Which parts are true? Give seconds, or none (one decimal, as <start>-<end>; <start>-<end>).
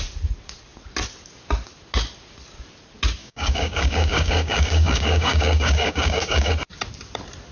0.0-3.2; 6.5-7.5